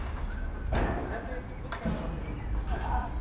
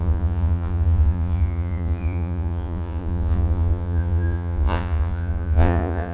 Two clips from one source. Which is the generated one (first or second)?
second